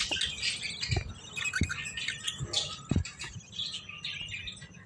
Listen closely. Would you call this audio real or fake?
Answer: real